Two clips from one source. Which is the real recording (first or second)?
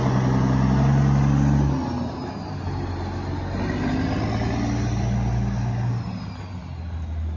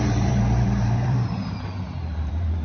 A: first